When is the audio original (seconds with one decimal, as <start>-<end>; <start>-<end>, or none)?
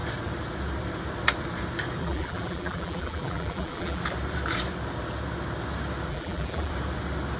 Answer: 0.0-2.0; 4.0-6.1; 6.7-7.4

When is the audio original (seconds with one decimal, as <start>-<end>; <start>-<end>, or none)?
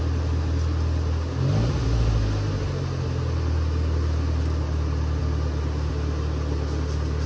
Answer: 0.0-7.3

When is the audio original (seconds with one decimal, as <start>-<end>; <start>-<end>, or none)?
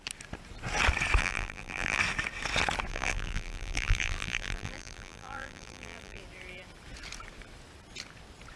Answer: 0.0-1.2; 2.0-2.9; 6.2-8.6